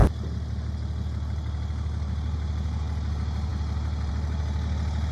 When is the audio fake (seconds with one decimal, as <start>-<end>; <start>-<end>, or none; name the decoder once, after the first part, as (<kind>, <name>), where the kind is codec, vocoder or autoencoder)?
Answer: none